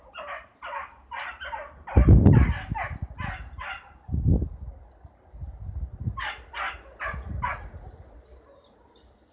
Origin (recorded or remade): recorded